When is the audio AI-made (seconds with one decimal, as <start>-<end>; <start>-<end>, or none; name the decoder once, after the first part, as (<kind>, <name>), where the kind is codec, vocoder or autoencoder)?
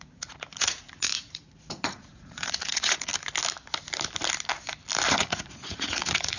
0.0-3.1 (vocoder, Vocos); 5.1-6.4